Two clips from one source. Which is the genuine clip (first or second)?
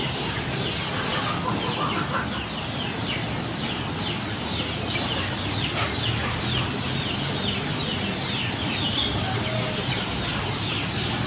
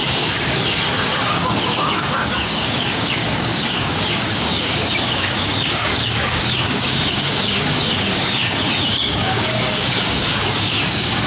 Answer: first